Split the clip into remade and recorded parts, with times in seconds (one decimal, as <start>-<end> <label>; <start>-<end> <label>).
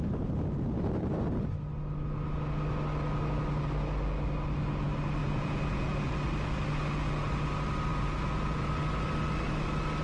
0.0-5.2 recorded; 5.2-6.1 remade; 6.1-7.9 recorded; 7.9-8.7 remade; 8.7-10.0 recorded